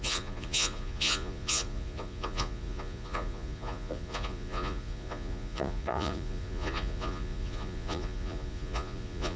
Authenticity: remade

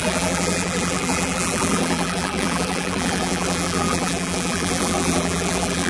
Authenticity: remade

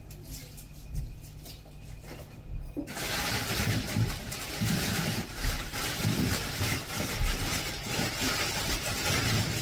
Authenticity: recorded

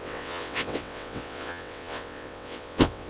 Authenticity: remade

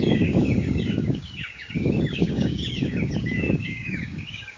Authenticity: remade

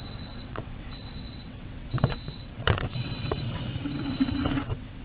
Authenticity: remade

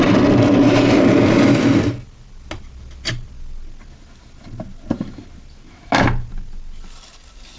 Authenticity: recorded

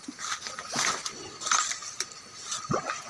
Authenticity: recorded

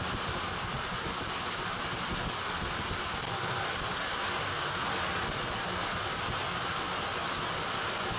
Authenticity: recorded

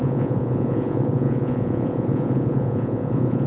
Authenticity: remade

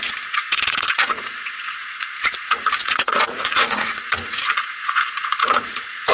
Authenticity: remade